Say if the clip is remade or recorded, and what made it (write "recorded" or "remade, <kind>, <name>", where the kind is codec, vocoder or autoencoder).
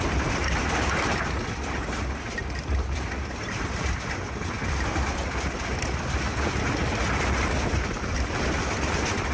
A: remade, vocoder, BigVGAN v2